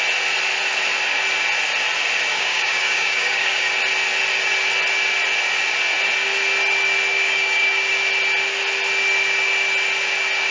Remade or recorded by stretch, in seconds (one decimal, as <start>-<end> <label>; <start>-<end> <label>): 0.0-2.3 recorded; 2.3-3.6 remade; 3.6-7.1 recorded; 7.1-7.9 remade; 7.9-10.5 recorded